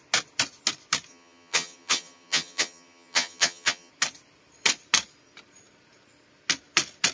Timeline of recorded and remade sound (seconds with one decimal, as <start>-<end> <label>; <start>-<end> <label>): 0.0-1.1 recorded; 1.1-3.9 remade; 3.9-7.1 recorded